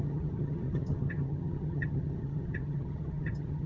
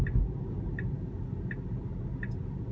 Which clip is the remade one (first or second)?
first